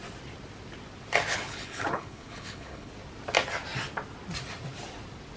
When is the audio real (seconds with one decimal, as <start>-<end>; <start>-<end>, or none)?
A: 0.0-1.3; 2.9-5.4

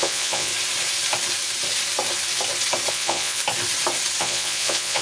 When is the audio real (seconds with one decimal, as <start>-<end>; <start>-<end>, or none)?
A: 0.5-2.9; 3.4-4.2

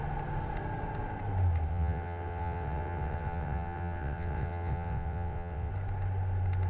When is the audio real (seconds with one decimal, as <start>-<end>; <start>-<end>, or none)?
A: 0.0-1.7; 5.7-6.7

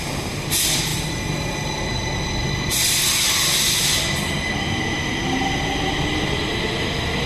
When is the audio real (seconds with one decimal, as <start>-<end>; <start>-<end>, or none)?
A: 0.0-7.3

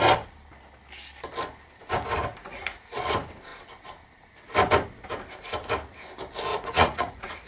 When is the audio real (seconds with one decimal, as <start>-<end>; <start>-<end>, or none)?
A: 0.0-2.4; 3.0-6.5